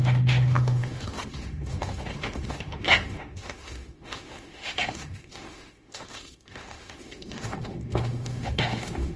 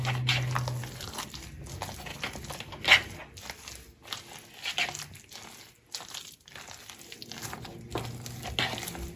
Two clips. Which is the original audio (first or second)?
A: second